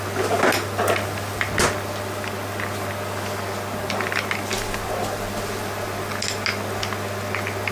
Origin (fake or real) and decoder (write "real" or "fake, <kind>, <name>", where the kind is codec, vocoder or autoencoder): real